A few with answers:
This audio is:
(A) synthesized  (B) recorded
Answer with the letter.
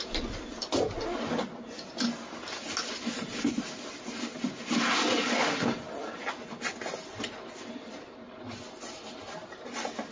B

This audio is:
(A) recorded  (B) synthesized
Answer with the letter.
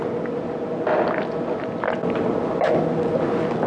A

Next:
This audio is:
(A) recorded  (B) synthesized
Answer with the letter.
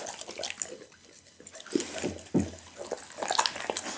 A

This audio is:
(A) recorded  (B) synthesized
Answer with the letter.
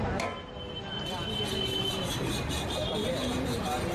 A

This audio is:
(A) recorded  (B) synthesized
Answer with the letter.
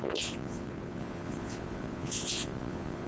B